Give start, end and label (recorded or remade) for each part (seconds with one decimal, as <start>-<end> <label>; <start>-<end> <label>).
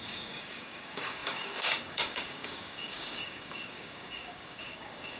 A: 0.0-5.2 remade